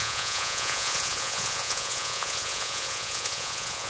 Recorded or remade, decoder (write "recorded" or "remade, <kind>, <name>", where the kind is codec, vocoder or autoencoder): remade, vocoder, Vocos